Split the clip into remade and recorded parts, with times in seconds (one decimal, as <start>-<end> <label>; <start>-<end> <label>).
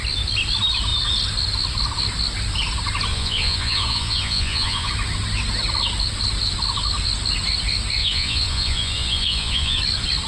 0.0-3.1 recorded; 3.1-4.9 remade; 4.9-8.0 recorded; 8.0-9.8 remade; 9.8-10.3 recorded